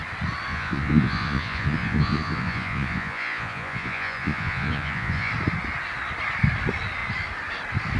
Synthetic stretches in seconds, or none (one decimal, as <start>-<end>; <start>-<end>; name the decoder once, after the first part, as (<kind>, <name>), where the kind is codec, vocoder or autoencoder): 0.5-5.3 (vocoder, Vocos)